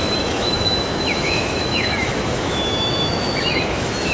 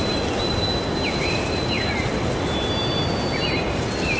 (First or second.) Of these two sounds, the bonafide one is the second